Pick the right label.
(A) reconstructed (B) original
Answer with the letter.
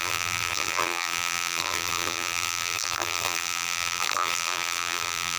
A